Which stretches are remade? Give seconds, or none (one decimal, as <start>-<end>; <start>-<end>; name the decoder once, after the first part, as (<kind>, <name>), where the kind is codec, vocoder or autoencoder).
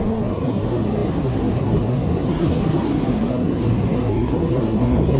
0.0-5.2 (codec, SNAC)